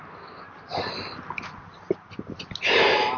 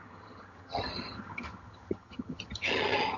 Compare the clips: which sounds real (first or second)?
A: first